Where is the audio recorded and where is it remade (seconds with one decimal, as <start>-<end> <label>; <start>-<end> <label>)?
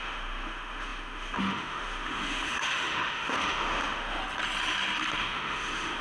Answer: 0.0-4.2 remade; 4.2-5.2 recorded; 5.2-6.0 remade